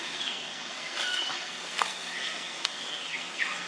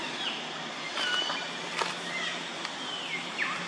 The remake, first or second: first